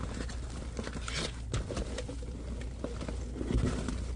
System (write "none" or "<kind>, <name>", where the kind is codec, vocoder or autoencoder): none